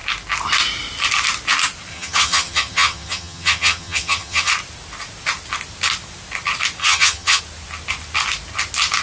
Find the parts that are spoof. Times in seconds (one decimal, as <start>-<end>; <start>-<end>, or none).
1.9-4.5; 6.8-7.4